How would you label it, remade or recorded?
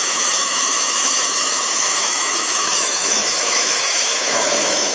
remade